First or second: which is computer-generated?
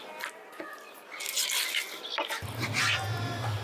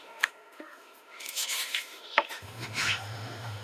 second